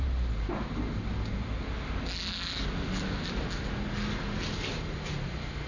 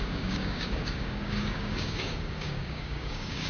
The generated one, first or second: second